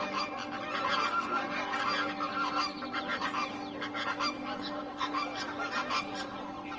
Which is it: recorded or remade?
recorded